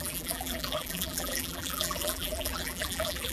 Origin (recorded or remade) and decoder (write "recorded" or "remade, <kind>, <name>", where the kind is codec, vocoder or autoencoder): remade, vocoder, BigVGAN v2